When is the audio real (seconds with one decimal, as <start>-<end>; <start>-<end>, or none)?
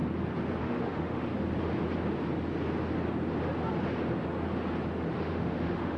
0.0-0.6; 1.3-4.9